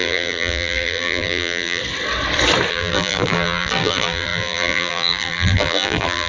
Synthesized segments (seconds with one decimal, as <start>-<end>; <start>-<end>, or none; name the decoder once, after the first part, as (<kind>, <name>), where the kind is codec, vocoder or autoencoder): 0.0-1.8 (vocoder, BigVGAN v2); 2.7-6.3